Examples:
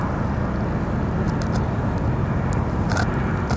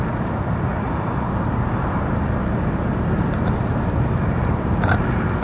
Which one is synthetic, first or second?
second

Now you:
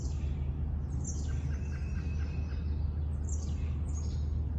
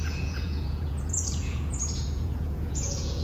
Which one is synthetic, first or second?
second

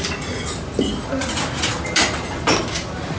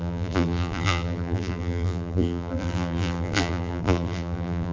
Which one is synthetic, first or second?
second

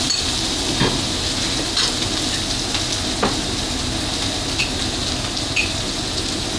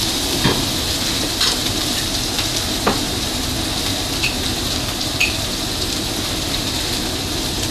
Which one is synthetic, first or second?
second